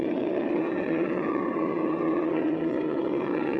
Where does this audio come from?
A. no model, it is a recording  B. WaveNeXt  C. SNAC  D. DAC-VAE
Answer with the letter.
B